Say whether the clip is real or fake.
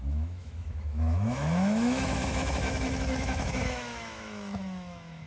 fake